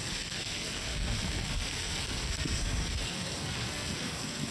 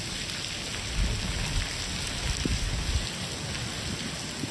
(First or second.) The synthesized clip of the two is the first